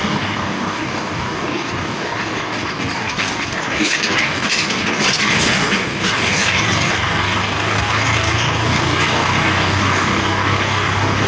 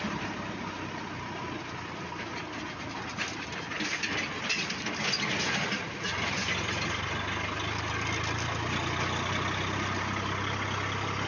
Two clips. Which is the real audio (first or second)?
second